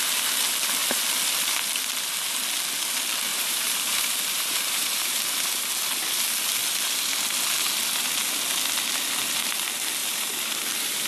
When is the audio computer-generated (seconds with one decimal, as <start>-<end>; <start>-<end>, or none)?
3.3-5.5; 10.0-11.1

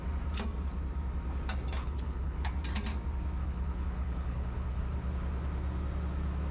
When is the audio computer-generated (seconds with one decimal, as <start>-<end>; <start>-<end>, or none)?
1.8-2.5; 3.4-4.8

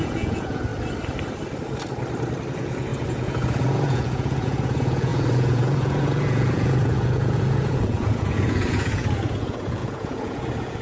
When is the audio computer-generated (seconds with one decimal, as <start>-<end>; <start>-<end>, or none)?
0.0-0.7; 2.5-10.8

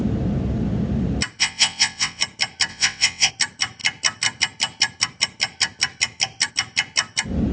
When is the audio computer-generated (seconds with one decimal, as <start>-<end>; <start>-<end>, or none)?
1.4-2.2; 2.7-3.3

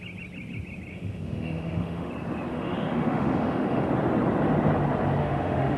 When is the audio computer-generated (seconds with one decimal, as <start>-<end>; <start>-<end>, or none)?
0.9-2.1; 2.5-3.9; 5.2-5.8